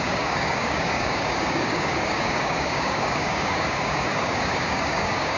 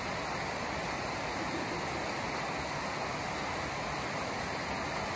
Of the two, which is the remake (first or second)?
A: first